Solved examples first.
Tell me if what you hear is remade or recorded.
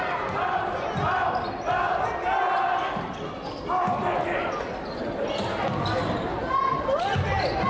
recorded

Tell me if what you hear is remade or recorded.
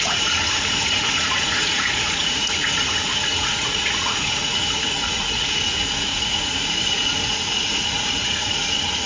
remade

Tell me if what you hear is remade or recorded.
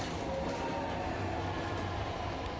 recorded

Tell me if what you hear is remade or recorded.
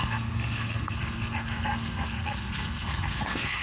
remade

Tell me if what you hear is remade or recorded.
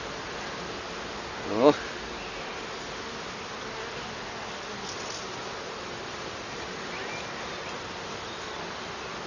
recorded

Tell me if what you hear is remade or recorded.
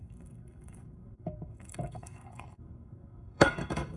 remade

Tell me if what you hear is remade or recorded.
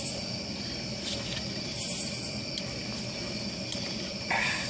recorded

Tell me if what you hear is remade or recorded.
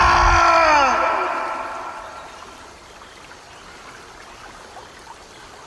recorded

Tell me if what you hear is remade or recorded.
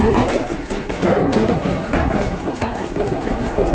remade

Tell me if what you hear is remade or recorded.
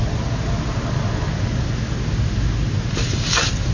recorded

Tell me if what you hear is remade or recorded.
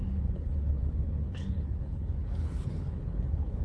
remade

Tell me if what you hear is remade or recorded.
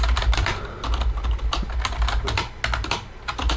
recorded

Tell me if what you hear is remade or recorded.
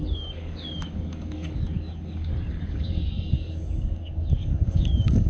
remade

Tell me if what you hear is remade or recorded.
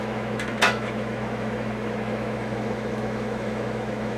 remade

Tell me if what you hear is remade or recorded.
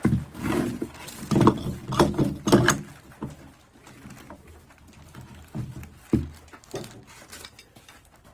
recorded